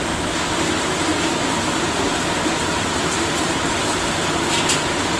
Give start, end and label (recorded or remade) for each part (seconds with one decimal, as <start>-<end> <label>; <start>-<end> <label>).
0.0-1.1 recorded; 1.1-4.2 remade; 4.2-5.2 recorded